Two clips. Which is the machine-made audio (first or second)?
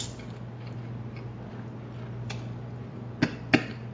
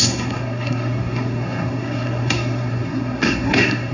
second